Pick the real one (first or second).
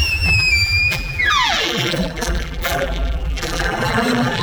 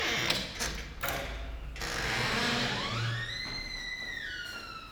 second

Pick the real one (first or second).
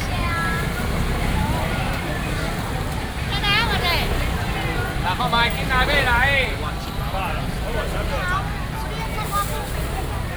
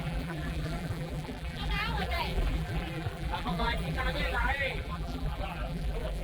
first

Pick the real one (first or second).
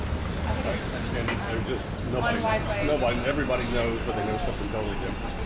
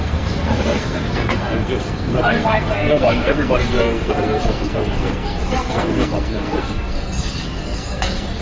first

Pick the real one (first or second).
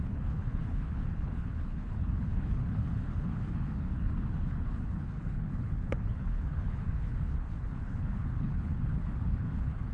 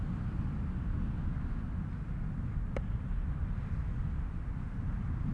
second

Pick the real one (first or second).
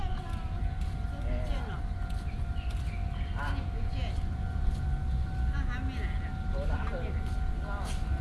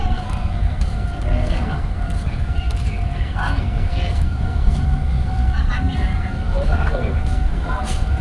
first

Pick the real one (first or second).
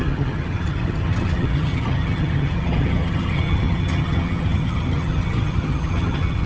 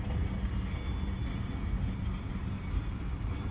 second